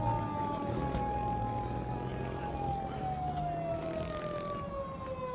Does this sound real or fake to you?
real